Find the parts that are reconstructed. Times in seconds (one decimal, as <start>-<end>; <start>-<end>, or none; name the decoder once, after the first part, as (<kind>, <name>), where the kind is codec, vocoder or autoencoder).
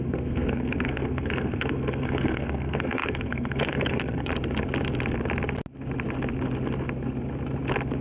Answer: 0.0-4.3 (codec, SNAC)